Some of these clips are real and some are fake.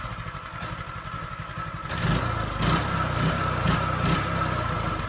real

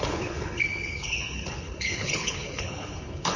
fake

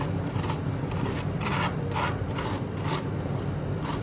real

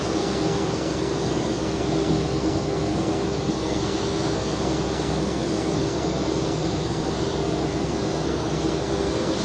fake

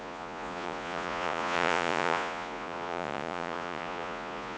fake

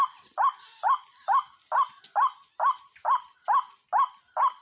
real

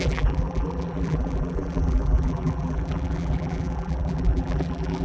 fake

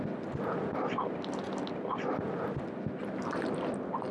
real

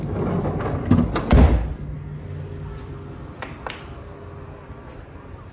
real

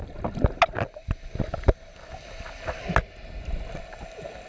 real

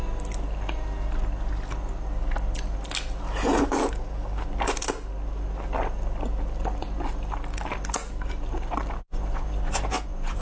real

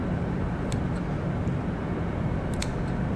real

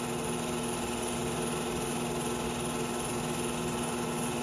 real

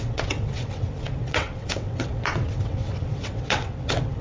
fake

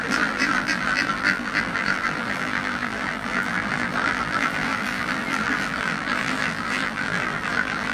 fake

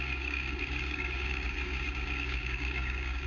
fake